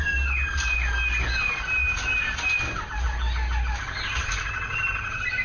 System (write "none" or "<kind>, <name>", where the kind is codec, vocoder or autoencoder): none